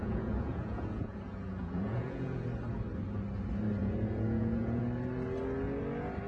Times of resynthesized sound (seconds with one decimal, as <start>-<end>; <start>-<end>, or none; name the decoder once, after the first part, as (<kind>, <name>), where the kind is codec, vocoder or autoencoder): 0.0-2.4 (vocoder, Vocos); 3.8-4.8